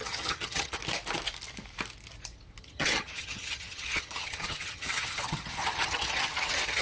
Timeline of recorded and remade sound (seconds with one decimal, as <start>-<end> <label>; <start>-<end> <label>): 0.0-0.8 remade; 0.8-2.6 recorded; 2.6-6.8 remade